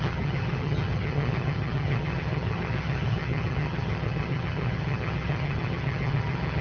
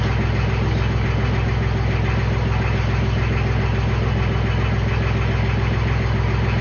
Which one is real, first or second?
second